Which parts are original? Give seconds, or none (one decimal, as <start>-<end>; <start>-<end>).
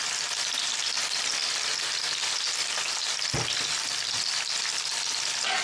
0.0-5.6